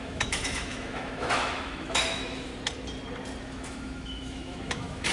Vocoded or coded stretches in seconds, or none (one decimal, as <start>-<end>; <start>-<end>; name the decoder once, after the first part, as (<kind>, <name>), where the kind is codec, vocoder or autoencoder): 0.0-2.5 (autoencoder, DAC-VAE); 3.4-5.1